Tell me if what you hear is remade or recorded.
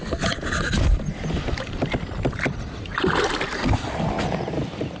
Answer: recorded